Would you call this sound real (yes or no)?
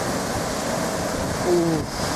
yes